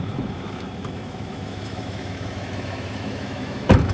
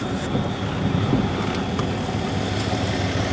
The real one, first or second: second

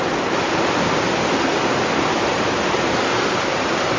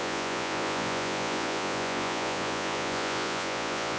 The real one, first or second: first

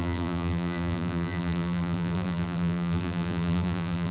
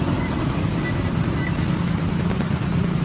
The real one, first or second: second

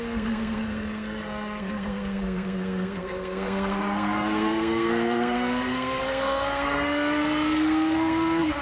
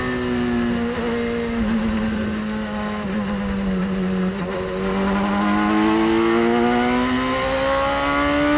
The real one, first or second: second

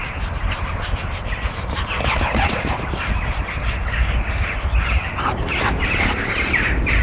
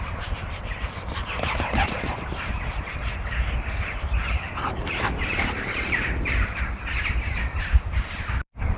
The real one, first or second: first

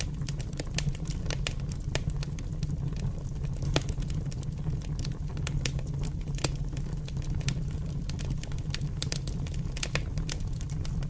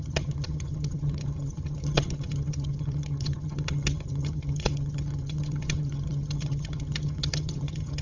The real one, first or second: first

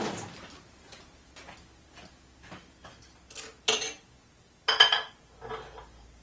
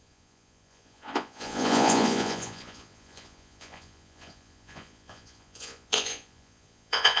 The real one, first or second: first